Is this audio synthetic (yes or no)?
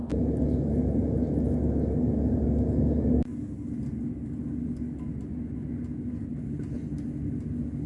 no